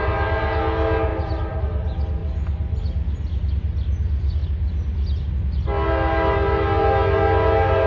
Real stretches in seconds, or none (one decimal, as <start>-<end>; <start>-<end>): 0.0-1.1; 1.6-7.9